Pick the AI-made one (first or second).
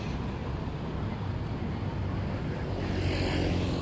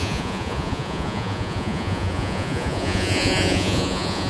second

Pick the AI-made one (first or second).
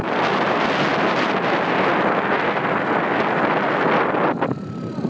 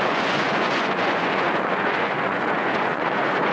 second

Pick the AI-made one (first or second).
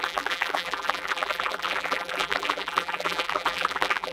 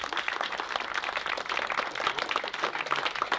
first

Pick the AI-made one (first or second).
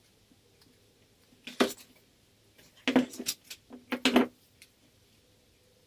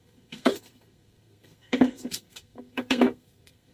second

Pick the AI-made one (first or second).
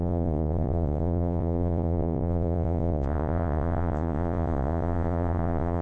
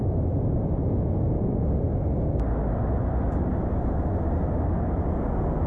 first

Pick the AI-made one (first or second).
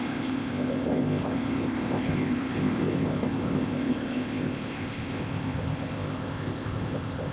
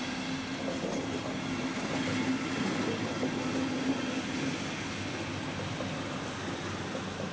first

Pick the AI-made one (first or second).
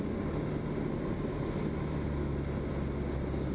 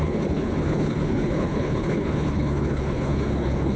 second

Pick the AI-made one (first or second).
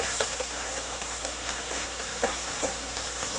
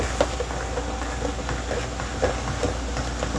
first